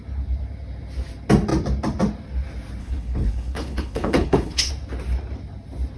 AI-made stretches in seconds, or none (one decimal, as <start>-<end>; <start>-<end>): 2.8-4.7